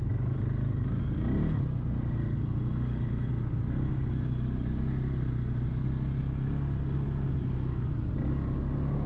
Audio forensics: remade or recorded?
recorded